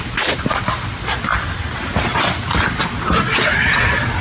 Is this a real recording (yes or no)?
yes